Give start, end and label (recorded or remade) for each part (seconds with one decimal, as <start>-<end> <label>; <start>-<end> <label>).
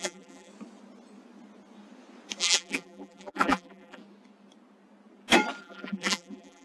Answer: 0.0-0.5 remade; 0.5-2.4 recorded; 2.4-4.0 remade; 4.0-5.6 recorded; 5.6-6.6 remade